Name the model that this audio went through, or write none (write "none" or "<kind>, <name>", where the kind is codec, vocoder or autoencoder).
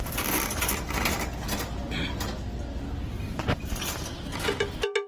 none